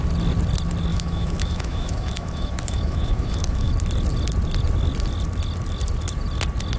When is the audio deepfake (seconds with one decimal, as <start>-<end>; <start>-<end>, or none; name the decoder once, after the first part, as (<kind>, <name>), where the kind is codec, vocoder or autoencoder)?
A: 0.9-3.7 (autoencoder, DAC-VAE)